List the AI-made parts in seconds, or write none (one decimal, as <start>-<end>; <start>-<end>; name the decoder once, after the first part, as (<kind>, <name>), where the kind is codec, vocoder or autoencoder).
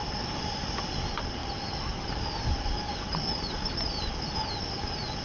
none